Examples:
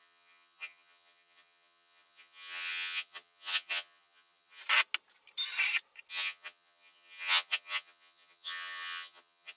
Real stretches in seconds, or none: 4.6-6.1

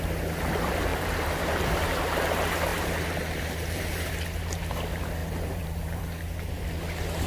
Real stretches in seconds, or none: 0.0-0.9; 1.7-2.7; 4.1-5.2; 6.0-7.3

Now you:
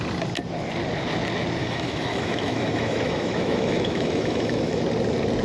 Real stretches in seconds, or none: 0.0-1.6; 4.8-5.4

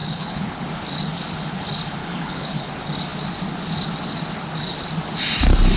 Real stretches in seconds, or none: 0.6-2.0; 2.7-5.8

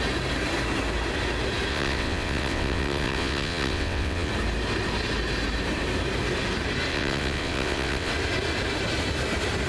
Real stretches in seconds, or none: 0.0-1.7; 4.3-6.9; 8.1-9.7

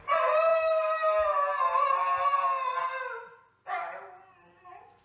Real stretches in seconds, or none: 0.0-5.0

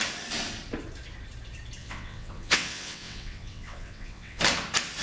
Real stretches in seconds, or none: 0.0-1.8; 4.4-5.0